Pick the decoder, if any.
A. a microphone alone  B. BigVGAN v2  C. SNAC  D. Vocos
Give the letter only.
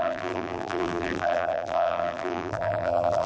B